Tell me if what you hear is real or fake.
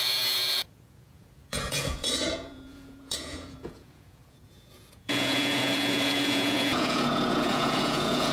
fake